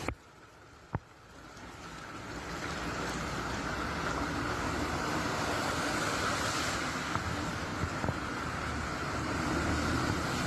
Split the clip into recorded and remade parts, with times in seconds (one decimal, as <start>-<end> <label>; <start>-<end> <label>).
0.0-10.5 recorded

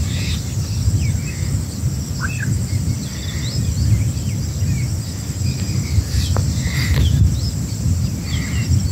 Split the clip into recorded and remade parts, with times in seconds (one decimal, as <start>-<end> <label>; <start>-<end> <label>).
0.0-8.9 recorded

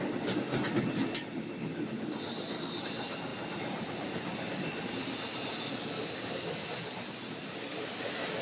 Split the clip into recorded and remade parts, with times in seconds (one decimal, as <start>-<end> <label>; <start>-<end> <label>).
0.0-8.4 recorded

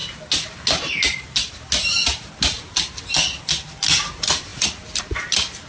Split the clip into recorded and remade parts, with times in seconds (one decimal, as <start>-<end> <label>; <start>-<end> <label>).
0.0-3.4 recorded; 3.4-5.7 remade

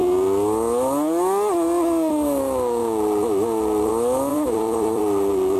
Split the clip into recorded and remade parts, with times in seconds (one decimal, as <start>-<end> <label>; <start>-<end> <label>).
0.0-4.3 recorded; 4.3-5.0 remade; 5.0-5.6 recorded